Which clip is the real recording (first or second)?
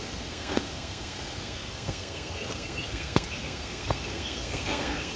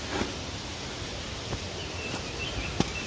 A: second